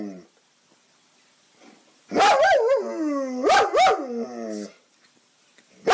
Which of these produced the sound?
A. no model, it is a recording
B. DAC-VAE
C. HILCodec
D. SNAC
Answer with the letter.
A